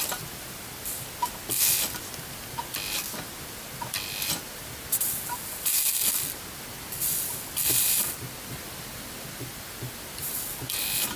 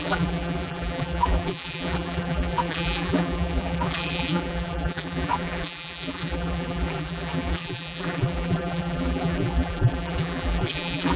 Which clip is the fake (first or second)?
second